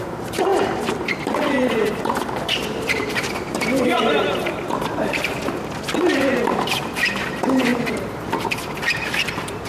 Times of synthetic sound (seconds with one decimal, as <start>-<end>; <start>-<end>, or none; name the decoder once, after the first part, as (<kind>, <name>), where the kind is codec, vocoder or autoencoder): 0.0-9.7 (vocoder, BigVGAN v2)